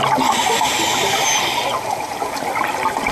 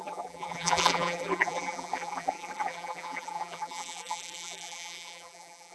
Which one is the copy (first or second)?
second